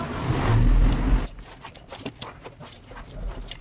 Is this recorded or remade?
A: recorded